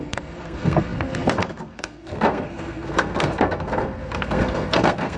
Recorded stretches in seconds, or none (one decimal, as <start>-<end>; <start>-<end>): none